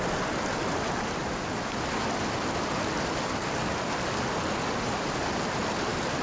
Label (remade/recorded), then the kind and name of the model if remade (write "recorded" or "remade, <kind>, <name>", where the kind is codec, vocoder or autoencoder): recorded